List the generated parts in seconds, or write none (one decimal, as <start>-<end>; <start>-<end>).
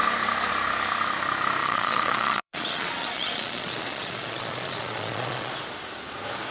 1.6-5.5